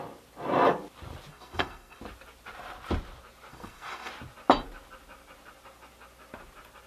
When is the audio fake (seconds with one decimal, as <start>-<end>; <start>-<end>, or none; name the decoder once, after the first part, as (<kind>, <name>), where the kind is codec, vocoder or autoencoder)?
1.3-2.0 (codec, SNAC); 3.5-4.1